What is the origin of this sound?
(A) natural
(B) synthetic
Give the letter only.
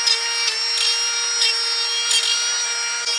A